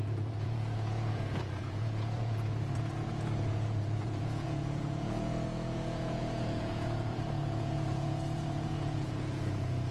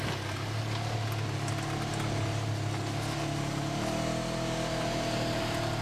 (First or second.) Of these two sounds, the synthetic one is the first